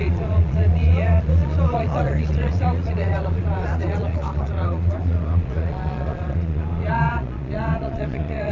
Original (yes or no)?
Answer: no